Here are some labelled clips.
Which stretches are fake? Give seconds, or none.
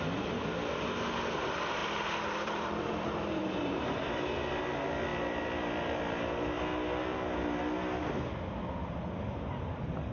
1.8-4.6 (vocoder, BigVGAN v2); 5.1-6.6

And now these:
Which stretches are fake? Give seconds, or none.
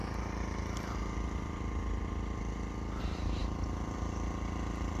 3.0-3.4 (vocoder, BigVGAN v2)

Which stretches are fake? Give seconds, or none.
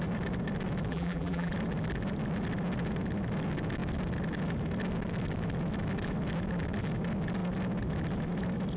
0.9-1.5 (vocoder, BigVGAN v2)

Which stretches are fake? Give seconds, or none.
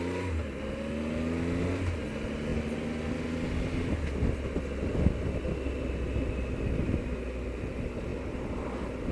2.5-3.1 (vocoder, BigVGAN v2); 8.1-9.1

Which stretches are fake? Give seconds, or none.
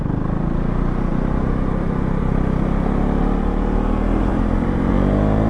1.1-2.2 (vocoder, BigVGAN v2); 4.3-4.9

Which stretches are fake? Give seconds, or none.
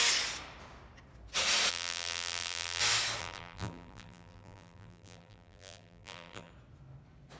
1.7-2.8 (vocoder, BigVGAN v2); 3.2-6.5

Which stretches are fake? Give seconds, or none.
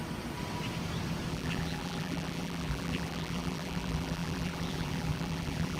1.3-5.8 (vocoder, BigVGAN v2)